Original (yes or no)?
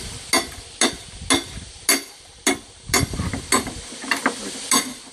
yes